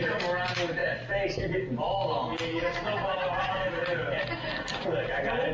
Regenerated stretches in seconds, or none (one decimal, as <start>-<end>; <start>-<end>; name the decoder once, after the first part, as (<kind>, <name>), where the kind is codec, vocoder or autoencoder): 0.0-5.5 (vocoder, BigVGAN v2)